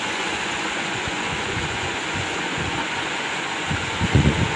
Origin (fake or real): fake